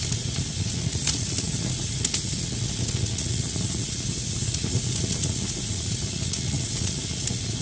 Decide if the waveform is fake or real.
fake